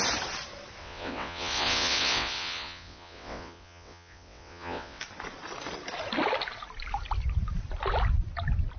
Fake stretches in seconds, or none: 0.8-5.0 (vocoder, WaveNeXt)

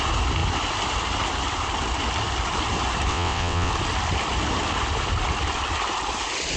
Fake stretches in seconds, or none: 3.1-3.7 (vocoder, WaveNeXt)

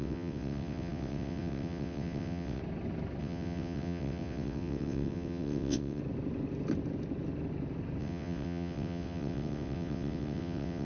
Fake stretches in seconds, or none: 0.0-2.6 (vocoder, WaveNeXt); 3.2-6.0; 8.0-10.8

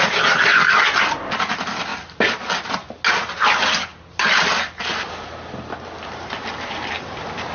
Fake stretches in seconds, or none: none

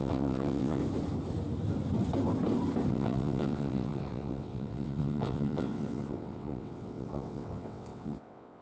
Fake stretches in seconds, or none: 0.0-0.8 (vocoder, WaveNeXt); 2.9-8.6